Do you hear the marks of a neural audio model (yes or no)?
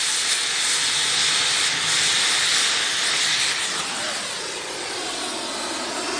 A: no